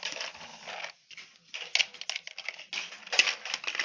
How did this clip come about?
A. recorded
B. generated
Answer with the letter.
A